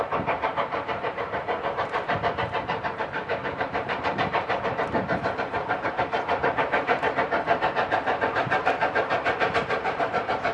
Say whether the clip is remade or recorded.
remade